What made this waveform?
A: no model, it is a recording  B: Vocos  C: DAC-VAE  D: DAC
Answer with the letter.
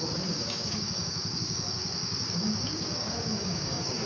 D